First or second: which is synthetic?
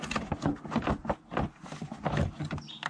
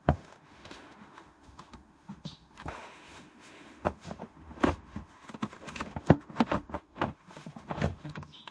second